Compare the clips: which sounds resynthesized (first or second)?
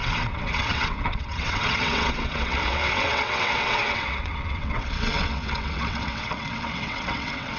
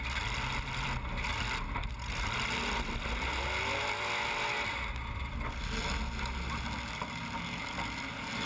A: first